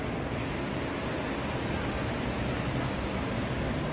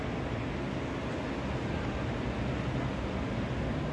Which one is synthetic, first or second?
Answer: first